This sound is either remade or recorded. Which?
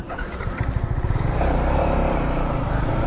remade